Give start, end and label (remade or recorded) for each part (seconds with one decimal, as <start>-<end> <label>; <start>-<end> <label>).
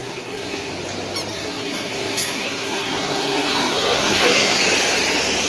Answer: 0.0-0.7 remade; 0.7-1.3 recorded; 1.3-4.6 remade; 4.6-5.5 recorded